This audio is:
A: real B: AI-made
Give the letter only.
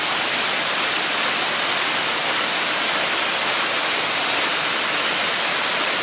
A